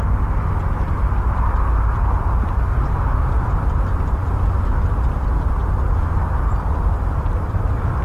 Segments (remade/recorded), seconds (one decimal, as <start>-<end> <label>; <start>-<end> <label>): 0.0-8.0 recorded